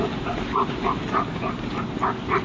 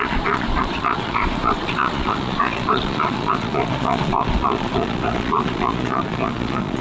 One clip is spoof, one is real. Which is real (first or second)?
first